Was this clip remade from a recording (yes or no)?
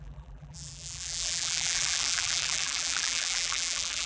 yes